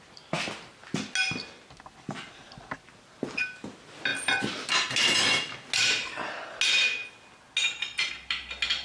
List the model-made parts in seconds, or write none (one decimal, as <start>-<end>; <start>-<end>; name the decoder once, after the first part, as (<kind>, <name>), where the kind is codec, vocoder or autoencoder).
none